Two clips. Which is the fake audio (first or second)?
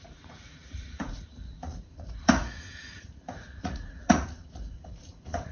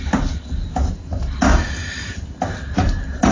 first